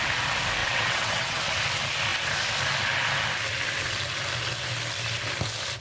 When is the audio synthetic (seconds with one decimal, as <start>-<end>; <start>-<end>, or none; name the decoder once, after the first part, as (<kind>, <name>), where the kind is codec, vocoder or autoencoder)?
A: 0.6-1.4 (vocoder, WaveNeXt)